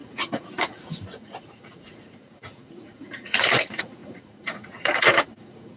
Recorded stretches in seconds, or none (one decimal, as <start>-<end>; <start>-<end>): none